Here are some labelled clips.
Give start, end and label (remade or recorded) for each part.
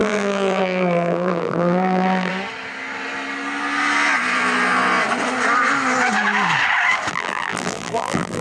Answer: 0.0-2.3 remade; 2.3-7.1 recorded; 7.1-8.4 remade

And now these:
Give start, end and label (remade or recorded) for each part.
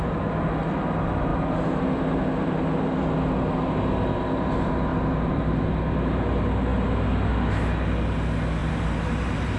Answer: 0.0-1.3 recorded; 1.3-1.8 remade; 1.8-4.9 recorded; 4.9-5.7 remade; 5.7-8.6 recorded; 8.6-9.6 remade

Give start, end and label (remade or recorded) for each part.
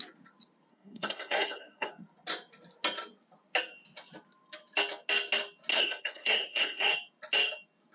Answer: 0.0-0.7 recorded; 0.7-1.9 remade; 1.9-5.7 recorded; 5.7-6.9 remade; 6.9-7.9 recorded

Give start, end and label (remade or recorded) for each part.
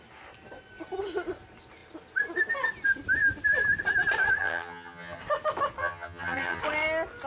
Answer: 0.0-4.4 recorded; 4.4-5.2 remade; 5.2-5.8 recorded; 5.8-6.6 remade; 6.6-7.3 recorded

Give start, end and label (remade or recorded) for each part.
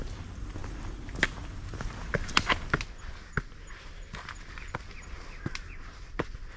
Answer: 0.0-6.6 recorded